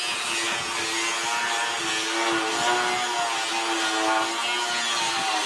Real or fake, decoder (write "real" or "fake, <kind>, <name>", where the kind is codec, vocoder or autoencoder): real